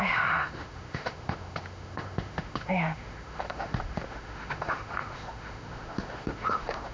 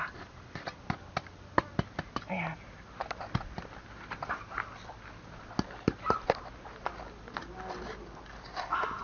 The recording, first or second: second